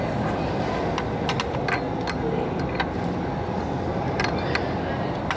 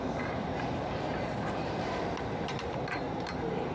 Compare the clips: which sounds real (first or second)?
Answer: first